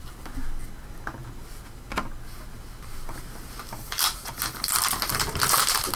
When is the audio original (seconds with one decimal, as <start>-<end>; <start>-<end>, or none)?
0.0-6.0